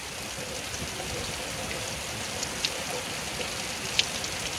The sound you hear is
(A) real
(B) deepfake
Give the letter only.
A